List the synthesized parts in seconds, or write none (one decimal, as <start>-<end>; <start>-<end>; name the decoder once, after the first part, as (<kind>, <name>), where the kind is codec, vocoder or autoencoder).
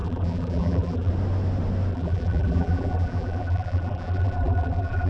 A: 0.0-1.1 (vocoder, BigVGAN v2); 1.9-5.1